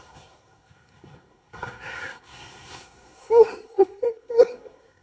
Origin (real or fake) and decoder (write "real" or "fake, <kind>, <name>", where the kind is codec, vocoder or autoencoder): fake, codec, SNAC